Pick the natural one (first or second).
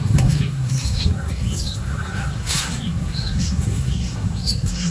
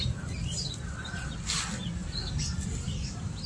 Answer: second